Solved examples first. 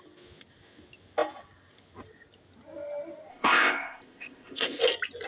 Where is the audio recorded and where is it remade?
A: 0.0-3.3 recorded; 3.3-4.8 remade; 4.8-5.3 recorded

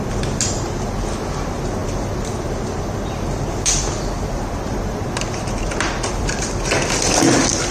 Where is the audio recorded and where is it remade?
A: 0.0-1.8 recorded; 1.8-6.4 remade; 6.4-7.7 recorded